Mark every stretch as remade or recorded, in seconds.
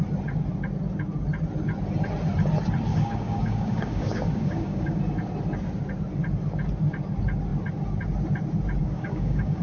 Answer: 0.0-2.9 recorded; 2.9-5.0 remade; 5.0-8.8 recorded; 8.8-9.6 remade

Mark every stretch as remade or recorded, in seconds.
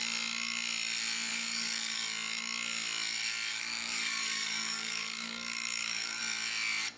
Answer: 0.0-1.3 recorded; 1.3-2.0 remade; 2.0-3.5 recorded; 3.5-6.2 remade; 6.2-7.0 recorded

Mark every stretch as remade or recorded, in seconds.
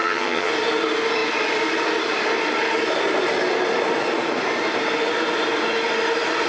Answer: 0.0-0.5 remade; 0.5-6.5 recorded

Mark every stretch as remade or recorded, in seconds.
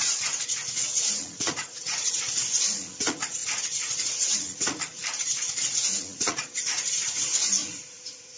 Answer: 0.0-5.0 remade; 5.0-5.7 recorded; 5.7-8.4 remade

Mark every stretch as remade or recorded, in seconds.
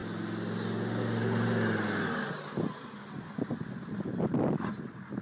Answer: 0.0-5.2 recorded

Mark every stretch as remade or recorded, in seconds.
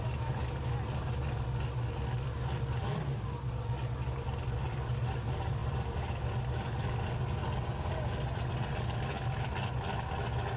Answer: 0.0-10.6 recorded